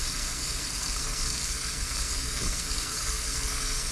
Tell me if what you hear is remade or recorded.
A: remade